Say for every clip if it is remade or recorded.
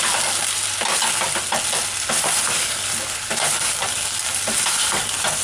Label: recorded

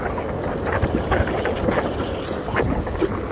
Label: recorded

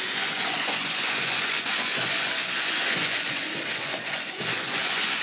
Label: remade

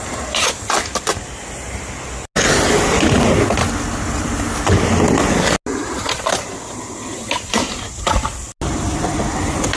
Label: recorded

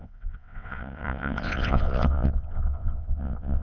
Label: remade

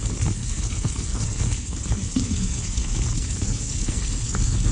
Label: remade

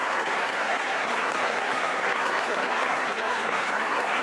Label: remade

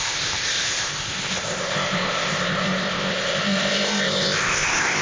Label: remade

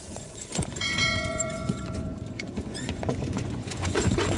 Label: remade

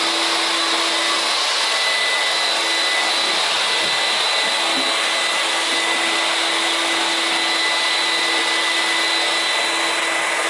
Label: recorded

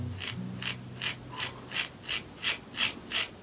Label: recorded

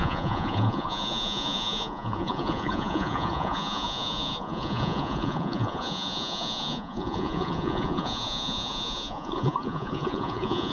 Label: remade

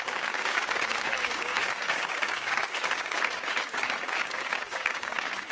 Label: remade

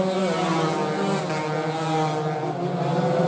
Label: recorded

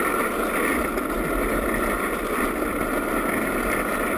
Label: recorded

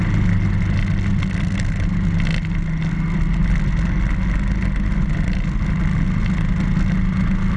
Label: recorded